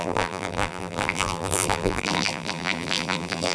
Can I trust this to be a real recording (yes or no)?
no